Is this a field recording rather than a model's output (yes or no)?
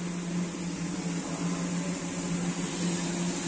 yes